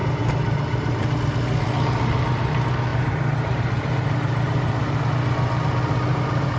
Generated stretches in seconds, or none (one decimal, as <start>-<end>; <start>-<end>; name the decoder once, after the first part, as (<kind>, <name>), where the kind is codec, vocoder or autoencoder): 0.0-1.2 (vocoder, BigVGAN v2); 2.9-5.0; 6.1-6.6